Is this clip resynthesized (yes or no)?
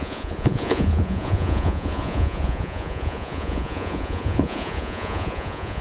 yes